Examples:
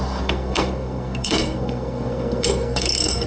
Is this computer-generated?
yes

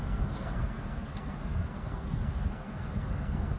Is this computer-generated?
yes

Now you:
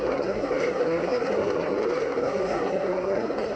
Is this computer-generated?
yes